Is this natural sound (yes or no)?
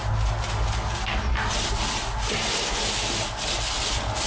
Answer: yes